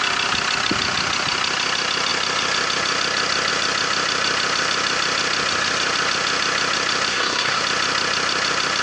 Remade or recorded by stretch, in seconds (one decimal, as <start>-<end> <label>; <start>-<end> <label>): 0.0-7.1 recorded; 7.1-7.6 remade; 7.6-8.8 recorded